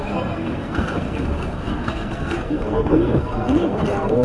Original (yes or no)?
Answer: no